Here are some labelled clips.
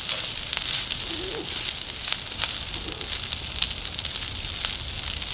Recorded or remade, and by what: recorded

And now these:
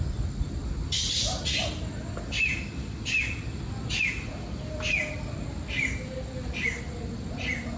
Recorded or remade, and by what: recorded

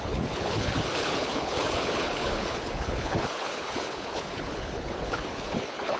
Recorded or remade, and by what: remade, codec, HILCodec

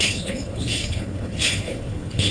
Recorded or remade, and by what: remade, codec, HILCodec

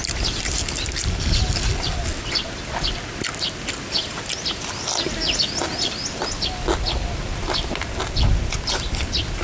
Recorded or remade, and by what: recorded